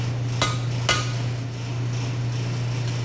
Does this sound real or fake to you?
real